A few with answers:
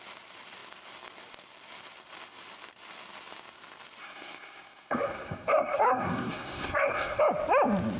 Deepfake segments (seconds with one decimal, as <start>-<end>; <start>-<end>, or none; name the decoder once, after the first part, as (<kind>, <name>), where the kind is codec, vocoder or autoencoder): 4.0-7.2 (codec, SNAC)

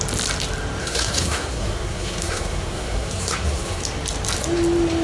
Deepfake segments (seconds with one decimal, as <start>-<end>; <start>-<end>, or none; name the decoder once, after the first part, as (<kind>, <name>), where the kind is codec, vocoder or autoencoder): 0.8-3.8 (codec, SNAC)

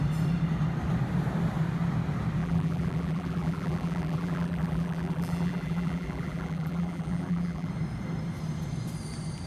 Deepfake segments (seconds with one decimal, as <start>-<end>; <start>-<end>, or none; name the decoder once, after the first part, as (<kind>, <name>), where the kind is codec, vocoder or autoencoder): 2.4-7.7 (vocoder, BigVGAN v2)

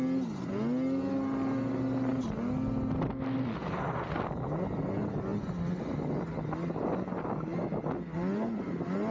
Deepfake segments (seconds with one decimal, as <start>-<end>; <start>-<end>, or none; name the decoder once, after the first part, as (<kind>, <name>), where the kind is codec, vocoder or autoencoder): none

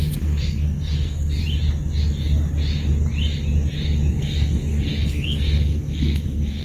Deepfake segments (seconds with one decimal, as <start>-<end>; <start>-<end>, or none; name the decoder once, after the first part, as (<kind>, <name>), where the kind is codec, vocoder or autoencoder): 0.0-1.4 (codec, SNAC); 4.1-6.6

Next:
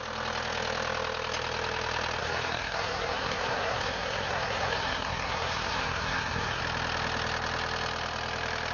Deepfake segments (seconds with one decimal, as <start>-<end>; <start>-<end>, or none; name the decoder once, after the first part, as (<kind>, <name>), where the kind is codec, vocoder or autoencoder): 2.2-6.6 (codec, SNAC)

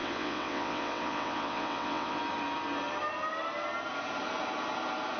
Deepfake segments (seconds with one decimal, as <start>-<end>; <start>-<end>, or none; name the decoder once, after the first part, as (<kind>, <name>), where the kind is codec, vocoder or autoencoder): 0.0-2.2 (vocoder, WaveNeXt)